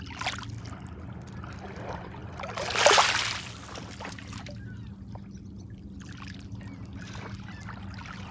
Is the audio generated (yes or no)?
no